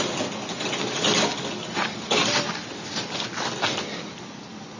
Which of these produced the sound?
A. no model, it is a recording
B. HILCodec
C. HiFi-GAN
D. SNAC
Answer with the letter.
A